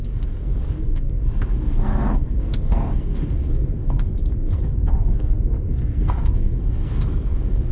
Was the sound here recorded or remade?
remade